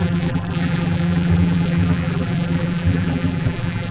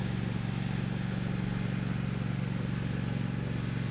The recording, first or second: second